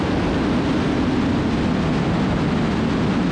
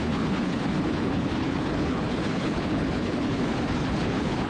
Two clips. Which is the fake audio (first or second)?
second